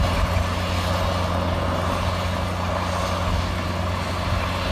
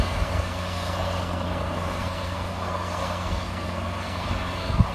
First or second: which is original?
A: first